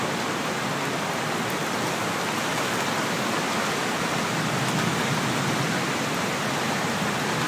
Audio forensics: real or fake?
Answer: real